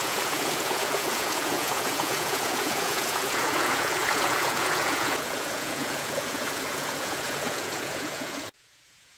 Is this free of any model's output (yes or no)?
no